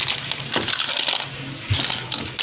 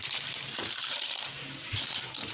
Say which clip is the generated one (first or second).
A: second